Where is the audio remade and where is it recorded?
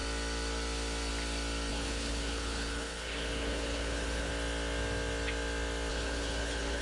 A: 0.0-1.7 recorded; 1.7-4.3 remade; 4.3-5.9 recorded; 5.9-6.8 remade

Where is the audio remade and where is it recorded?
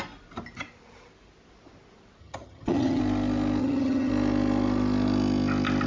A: 0.0-2.2 recorded; 2.2-3.0 remade; 3.0-3.6 recorded; 3.6-4.1 remade; 4.1-5.9 recorded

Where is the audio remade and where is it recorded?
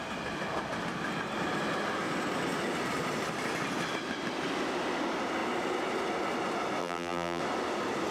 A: 0.0-6.8 recorded; 6.8-7.4 remade; 7.4-8.1 recorded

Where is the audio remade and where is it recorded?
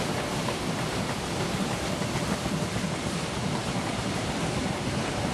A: 0.0-3.6 recorded; 3.6-4.3 remade; 4.3-5.3 recorded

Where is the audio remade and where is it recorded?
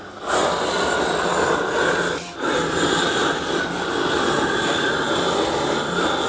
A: 0.0-6.3 recorded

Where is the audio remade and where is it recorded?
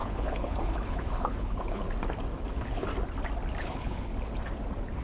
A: 0.0-1.8 remade; 1.8-2.5 recorded; 2.5-2.9 remade; 2.9-3.6 recorded; 3.6-4.1 remade; 4.1-5.0 recorded